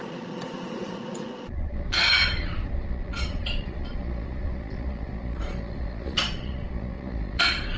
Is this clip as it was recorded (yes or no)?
no